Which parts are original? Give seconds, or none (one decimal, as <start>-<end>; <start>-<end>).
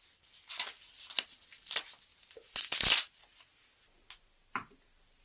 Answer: 0.0-5.2